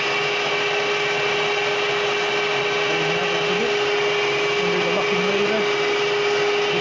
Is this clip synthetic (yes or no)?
no